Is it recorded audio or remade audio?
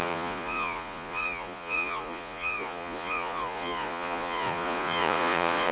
remade